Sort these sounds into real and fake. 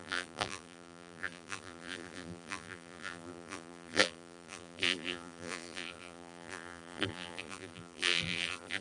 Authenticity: fake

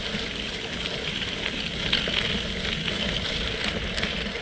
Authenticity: real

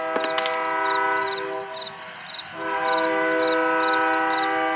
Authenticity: real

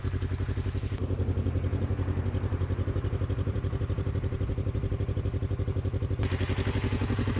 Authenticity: real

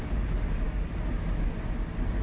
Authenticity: real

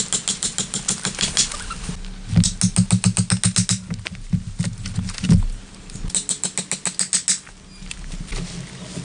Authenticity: real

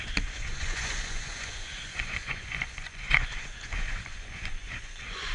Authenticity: fake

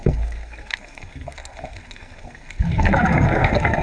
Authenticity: fake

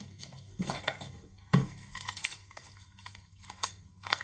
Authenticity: fake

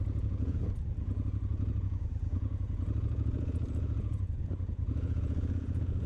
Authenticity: fake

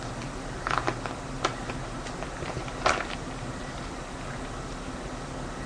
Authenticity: real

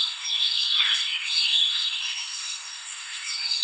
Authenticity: fake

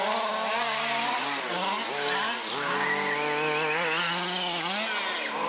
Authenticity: real